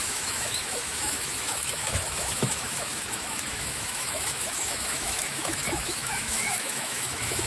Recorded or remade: remade